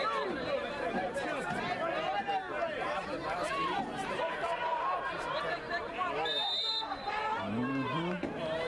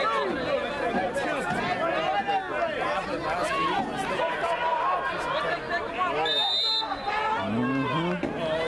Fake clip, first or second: first